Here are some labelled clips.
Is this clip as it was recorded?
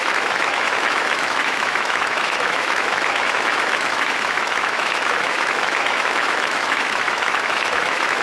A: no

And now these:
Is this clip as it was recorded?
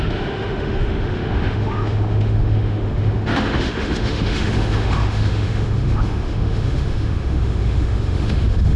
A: no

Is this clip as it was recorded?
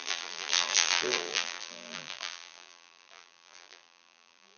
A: no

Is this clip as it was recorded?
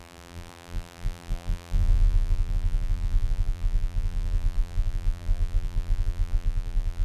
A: no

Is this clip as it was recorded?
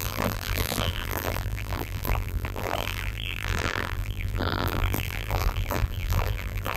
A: no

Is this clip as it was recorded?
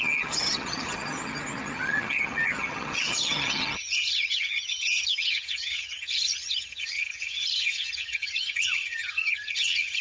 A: no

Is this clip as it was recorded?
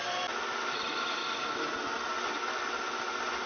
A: yes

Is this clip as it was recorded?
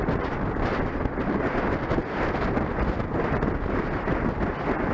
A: yes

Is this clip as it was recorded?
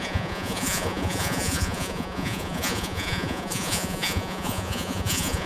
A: no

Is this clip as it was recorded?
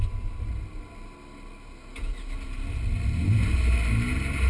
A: yes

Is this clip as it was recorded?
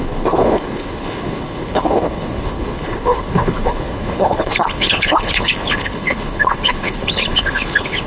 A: no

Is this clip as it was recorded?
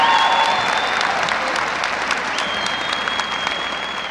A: yes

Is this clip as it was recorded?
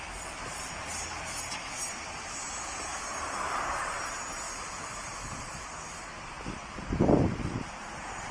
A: yes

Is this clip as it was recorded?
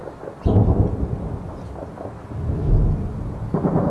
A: yes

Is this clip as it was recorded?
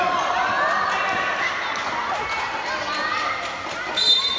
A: yes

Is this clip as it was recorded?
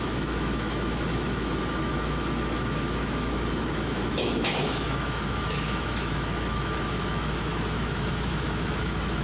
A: no